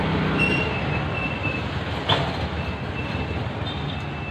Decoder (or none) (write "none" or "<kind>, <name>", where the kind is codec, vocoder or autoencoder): none